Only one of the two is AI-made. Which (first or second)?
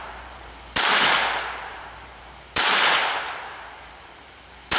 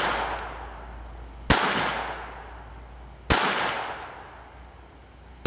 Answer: first